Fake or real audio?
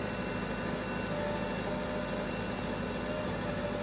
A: real